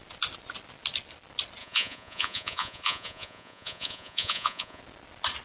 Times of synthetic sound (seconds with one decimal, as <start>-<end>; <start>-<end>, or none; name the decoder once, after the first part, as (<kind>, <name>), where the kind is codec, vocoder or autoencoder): 1.6-4.8 (vocoder, Vocos)